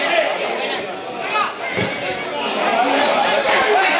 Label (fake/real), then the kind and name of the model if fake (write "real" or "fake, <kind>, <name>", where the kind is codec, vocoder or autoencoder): real